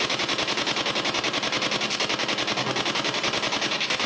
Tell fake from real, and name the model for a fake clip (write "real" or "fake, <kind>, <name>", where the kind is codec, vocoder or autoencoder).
real